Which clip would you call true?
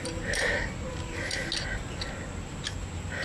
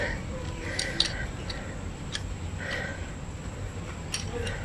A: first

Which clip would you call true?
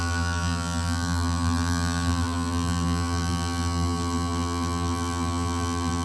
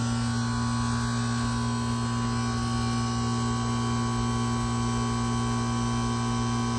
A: second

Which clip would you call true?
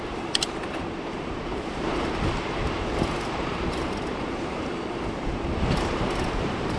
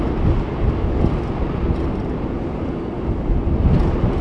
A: second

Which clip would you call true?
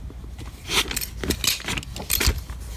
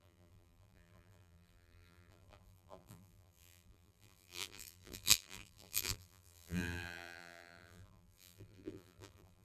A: first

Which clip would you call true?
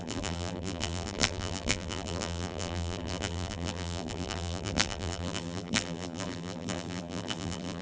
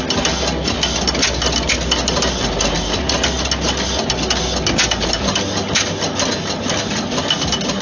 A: second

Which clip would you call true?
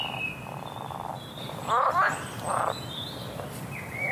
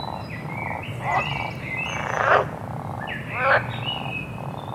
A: first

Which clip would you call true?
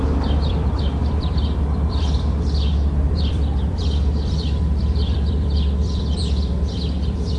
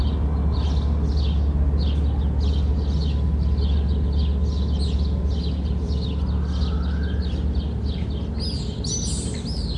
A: second